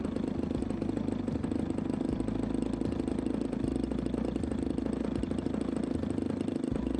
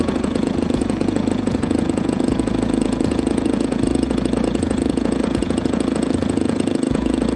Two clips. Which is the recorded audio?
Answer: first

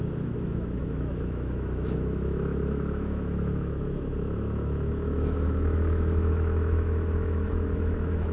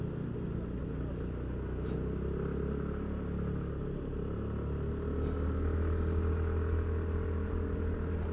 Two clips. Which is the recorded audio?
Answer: second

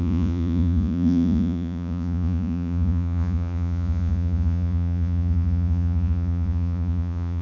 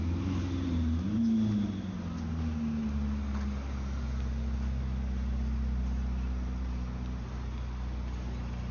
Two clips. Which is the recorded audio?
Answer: second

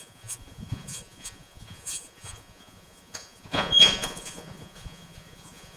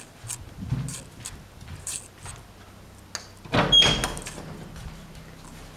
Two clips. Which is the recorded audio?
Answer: second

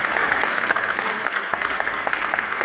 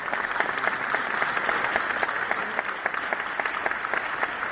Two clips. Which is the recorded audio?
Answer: second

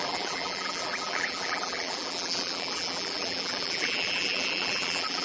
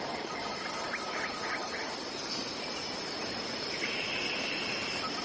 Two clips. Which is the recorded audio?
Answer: second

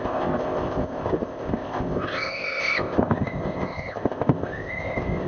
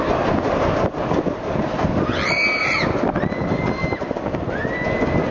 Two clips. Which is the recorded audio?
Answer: second